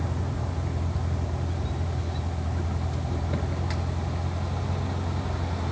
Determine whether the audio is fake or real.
real